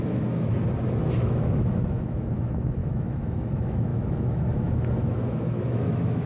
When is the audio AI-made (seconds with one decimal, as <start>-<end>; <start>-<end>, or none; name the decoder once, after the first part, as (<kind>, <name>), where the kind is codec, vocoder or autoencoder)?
0.0-0.5 (autoencoder, DAC-VAE); 1.1-6.3